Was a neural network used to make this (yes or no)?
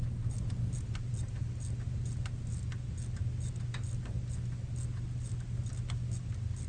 no